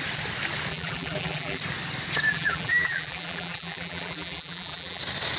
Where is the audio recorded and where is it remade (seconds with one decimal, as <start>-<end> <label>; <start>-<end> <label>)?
0.0-0.7 recorded; 0.7-1.6 remade; 1.6-2.3 recorded; 2.3-5.0 remade; 5.0-5.4 recorded